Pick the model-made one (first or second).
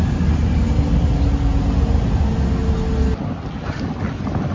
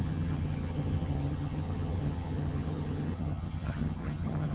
second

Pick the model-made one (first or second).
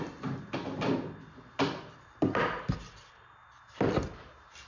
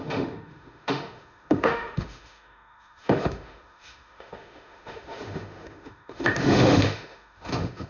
second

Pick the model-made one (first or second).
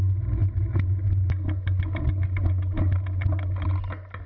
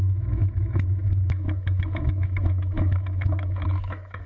second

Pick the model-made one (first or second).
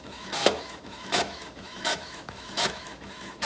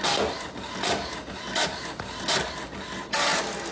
first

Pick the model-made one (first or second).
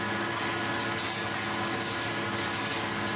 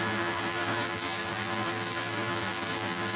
second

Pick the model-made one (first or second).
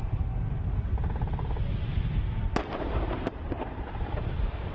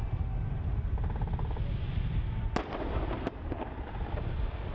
first